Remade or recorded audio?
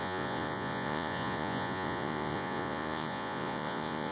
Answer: remade